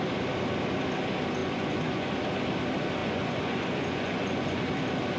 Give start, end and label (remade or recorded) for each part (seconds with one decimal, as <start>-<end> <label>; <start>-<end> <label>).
0.0-1.4 recorded; 1.4-2.1 remade; 2.1-3.0 recorded; 3.0-4.6 remade; 4.6-5.2 recorded